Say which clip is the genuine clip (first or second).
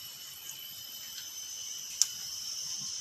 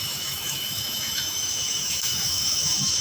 first